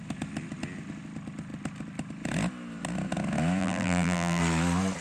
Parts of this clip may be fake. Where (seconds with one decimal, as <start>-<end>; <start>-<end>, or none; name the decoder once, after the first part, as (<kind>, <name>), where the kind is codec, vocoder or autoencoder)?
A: 3.6-4.4 (vocoder, BigVGAN v2)

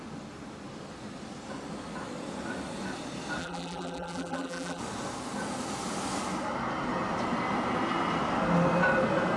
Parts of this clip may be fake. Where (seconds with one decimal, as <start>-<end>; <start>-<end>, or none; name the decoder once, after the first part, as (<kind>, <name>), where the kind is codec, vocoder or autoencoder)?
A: 3.4-4.8 (vocoder, BigVGAN v2)

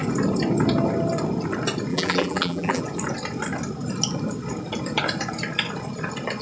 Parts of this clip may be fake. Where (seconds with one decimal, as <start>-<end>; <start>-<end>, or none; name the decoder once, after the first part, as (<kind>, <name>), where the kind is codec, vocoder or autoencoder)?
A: 1.9-2.8 (vocoder, BigVGAN v2)

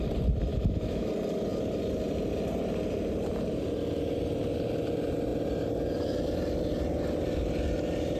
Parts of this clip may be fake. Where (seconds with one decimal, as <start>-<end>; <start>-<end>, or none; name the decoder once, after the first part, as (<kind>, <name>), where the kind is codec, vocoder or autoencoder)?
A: 0.5-1.1 (autoencoder, DAC-VAE)

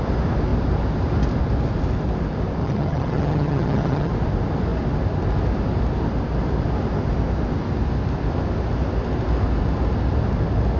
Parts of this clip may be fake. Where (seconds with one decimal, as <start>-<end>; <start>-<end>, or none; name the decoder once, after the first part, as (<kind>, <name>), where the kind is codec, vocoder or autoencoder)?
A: 2.6-4.1 (vocoder, HiFi-GAN)